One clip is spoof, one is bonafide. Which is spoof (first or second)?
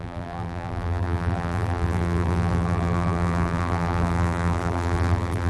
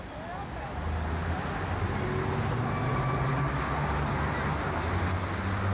first